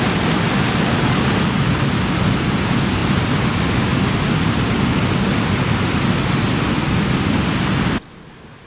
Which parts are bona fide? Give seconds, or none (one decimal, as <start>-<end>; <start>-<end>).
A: 0.0-8.7